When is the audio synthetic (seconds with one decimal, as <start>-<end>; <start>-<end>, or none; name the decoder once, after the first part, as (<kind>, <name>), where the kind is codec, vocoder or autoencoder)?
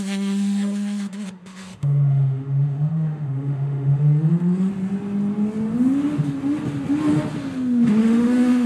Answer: 0.0-4.7 (autoencoder, DAC-VAE); 8.0-8.7